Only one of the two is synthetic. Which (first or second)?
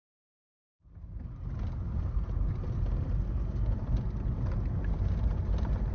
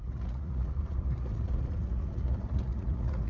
second